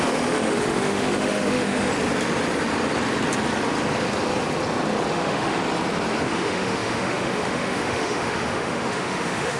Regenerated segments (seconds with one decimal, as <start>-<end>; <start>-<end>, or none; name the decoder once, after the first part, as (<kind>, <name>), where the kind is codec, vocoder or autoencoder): 0.0-1.9 (autoencoder, DAC-VAE); 5.1-5.6; 6.2-9.6